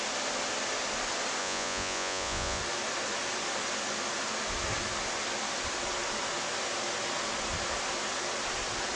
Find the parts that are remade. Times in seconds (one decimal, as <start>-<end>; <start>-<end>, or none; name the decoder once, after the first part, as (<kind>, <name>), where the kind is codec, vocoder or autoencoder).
1.4-2.6 (vocoder, Vocos)